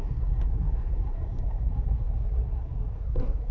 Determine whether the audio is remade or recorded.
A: remade